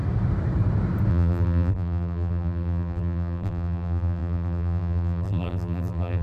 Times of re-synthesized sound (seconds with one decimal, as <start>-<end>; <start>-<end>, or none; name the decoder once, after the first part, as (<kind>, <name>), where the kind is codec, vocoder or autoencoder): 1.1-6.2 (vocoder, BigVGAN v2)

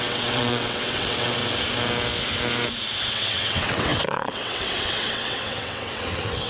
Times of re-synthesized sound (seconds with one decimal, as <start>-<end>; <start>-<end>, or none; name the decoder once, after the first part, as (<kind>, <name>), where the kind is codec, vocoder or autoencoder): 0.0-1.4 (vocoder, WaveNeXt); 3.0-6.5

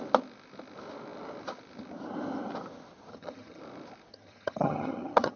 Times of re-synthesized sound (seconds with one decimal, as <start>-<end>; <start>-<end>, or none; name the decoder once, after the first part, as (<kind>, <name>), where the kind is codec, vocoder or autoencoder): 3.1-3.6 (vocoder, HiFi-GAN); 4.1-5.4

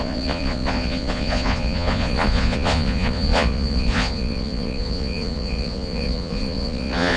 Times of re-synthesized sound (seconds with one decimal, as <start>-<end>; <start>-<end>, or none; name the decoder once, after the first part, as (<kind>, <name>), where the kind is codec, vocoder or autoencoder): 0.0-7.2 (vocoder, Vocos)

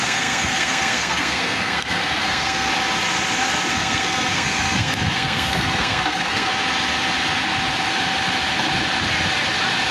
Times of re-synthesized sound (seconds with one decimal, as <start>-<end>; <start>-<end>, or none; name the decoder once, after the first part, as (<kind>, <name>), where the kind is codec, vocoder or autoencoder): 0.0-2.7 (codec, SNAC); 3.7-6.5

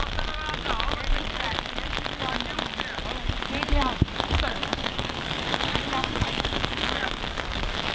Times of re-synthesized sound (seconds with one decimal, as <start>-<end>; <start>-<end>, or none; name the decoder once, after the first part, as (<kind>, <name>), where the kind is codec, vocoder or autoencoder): 4.7-5.4 (codec, DAC); 6.0-7.9

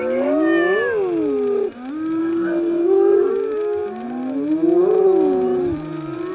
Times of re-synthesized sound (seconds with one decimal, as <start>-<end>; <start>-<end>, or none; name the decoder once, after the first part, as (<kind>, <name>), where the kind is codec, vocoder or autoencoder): 2.2-3.3 (codec, SNAC)

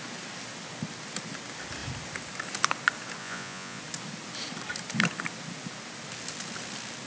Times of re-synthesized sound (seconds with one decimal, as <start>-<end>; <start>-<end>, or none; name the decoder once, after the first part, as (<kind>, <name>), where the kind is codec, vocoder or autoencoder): 3.2-3.8 (vocoder, Vocos)